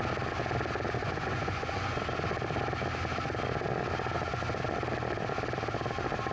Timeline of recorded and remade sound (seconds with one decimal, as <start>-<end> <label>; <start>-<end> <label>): 0.0-1.0 recorded; 1.0-2.0 remade; 2.0-6.3 recorded